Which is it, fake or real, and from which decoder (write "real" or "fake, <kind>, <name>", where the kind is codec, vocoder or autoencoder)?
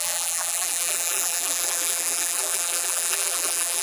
fake, vocoder, BigVGAN v2